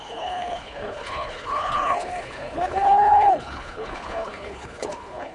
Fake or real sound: fake